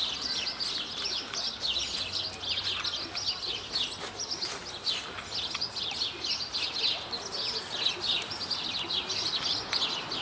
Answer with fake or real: real